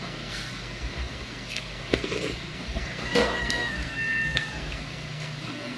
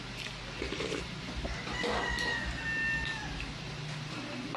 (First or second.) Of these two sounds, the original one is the second